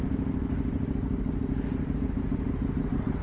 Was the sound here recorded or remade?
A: recorded